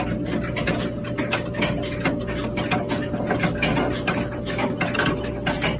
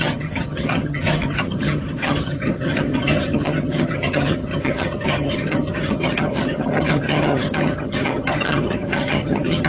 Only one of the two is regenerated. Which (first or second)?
second